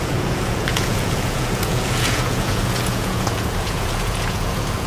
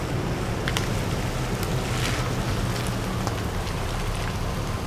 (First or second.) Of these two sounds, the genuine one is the second